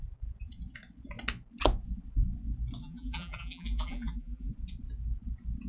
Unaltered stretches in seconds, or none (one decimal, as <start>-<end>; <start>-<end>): 0.0-2.8; 4.5-5.7